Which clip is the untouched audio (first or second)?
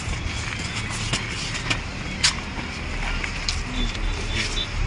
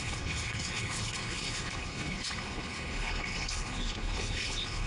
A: first